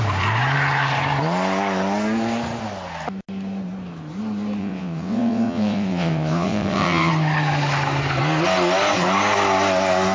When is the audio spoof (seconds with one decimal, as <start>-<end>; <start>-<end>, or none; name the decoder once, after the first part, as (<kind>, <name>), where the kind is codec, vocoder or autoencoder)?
4.6-7.1 (vocoder, WaveNeXt)

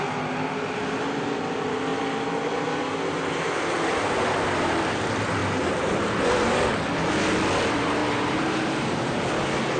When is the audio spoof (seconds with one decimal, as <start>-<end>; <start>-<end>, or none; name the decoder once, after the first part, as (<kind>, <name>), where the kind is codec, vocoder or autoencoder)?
5.4-6.7 (vocoder, BigVGAN v2); 8.0-9.2